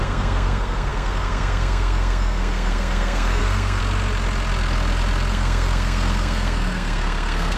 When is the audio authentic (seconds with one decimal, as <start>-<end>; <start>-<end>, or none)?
3.8-5.3